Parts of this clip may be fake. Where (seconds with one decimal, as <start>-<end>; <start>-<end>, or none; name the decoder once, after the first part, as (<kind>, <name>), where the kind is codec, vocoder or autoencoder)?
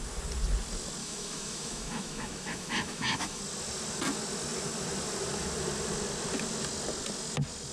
1.0-3.4 (autoencoder, DAC-VAE)